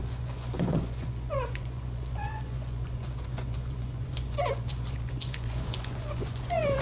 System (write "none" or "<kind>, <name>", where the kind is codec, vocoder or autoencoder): vocoder, Vocos